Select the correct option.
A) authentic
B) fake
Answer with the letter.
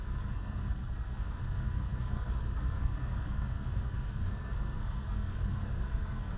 B